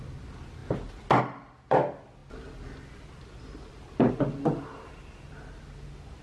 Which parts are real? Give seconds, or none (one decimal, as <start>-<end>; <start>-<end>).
0.0-6.2